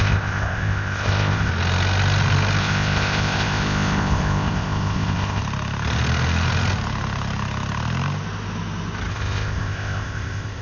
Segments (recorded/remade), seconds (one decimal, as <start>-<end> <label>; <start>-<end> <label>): 0.0-1.5 remade; 1.5-2.6 recorded; 2.6-5.4 remade; 5.4-9.1 recorded; 9.1-10.6 remade